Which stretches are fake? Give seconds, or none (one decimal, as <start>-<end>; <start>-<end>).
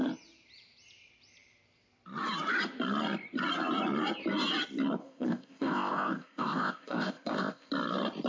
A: 5.0-7.7